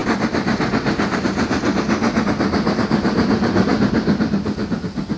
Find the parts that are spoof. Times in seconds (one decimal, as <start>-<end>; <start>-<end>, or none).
none